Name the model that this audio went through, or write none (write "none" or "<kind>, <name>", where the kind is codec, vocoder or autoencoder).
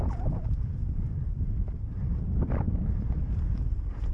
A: vocoder, BigVGAN v2